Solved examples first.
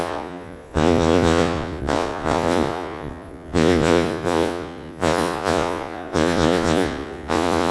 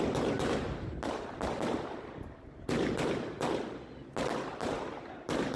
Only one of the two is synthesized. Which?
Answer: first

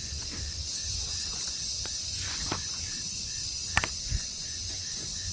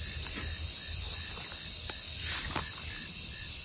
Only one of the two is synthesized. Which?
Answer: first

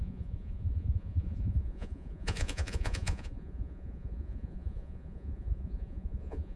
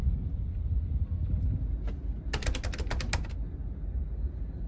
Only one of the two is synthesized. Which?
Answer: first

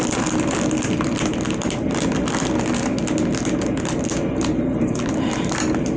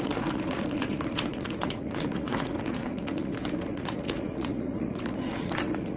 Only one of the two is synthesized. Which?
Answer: second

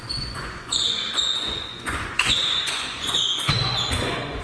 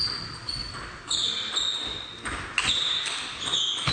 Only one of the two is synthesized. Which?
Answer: first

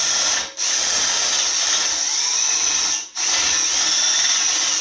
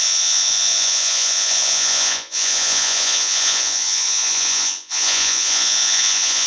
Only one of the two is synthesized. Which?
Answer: second